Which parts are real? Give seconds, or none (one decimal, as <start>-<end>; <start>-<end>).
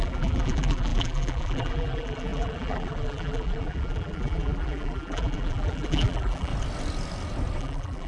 6.5-7.6